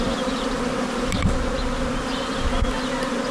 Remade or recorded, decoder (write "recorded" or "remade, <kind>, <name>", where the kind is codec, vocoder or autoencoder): recorded